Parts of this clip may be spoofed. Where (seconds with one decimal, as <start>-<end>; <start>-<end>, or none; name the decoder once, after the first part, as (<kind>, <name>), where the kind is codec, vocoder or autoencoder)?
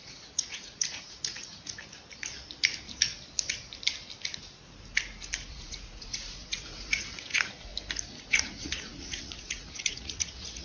0.0-1.8 (vocoder, Vocos); 5.5-7.7; 8.2-10.6